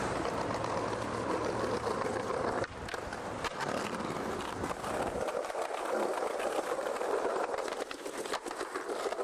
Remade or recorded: recorded